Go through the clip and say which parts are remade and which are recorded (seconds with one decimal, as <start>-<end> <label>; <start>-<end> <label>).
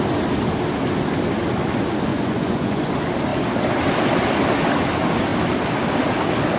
0.0-2.1 recorded; 2.1-2.9 remade; 2.9-6.6 recorded